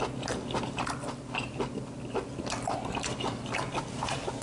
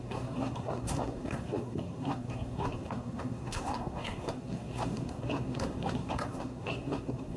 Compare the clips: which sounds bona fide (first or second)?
first